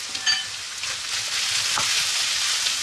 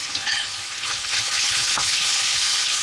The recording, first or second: first